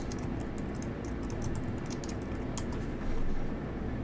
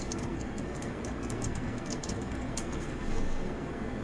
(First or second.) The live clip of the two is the first